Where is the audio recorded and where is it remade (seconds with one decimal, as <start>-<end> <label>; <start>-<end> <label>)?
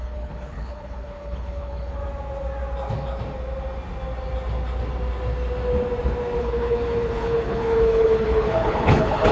0.0-2.0 remade; 2.0-6.4 recorded; 6.4-9.3 remade